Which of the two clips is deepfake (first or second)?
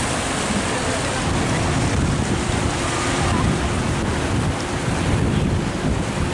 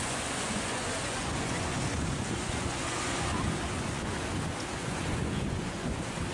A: second